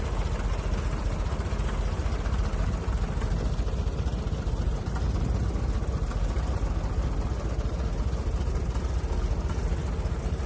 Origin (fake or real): real